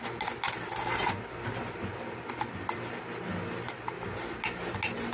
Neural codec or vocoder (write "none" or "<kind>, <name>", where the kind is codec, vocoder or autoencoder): none